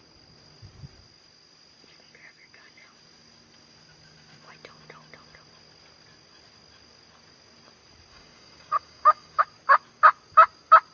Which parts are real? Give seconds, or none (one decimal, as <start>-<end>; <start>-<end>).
0.0-8.1; 9.4-10.9